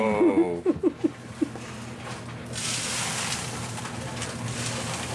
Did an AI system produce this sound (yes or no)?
no